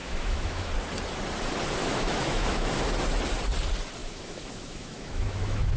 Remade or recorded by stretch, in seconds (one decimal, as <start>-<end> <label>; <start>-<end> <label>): 0.0-0.7 remade; 0.7-1.8 recorded; 1.8-2.7 remade; 2.7-4.0 recorded; 4.0-5.8 remade